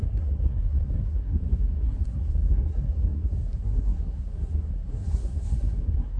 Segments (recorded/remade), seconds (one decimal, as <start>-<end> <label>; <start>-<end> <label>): 0.0-6.2 remade